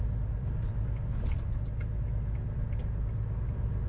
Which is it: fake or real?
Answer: real